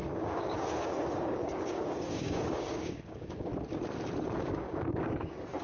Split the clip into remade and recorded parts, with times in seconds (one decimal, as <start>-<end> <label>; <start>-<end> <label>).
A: 0.0-3.5 remade; 3.5-4.4 recorded; 4.4-5.6 remade